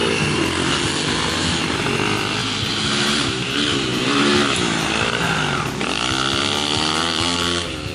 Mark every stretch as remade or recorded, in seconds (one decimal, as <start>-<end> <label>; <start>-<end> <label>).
0.0-2.4 recorded; 2.4-4.3 remade; 4.3-7.9 recorded